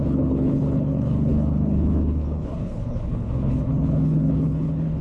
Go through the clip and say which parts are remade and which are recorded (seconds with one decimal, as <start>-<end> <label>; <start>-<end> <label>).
0.0-5.0 remade